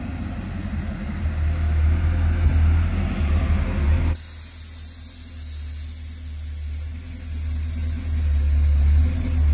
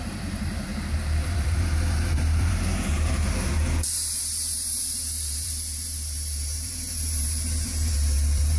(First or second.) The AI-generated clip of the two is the second